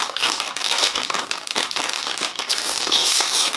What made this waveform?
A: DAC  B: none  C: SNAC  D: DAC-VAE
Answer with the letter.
A